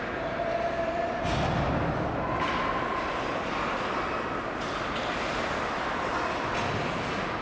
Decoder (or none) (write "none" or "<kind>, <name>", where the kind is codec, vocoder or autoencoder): none